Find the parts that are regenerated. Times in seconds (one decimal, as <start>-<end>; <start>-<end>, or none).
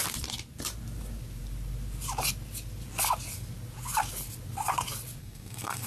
5.2-5.9